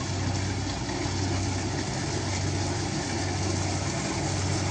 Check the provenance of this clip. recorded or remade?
recorded